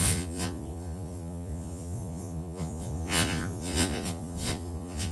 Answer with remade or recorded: remade